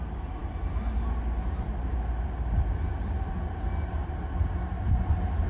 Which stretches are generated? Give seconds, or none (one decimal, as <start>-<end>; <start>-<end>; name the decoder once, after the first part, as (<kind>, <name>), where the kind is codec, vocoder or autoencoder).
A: none